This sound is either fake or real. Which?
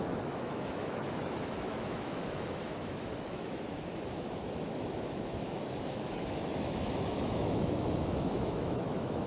fake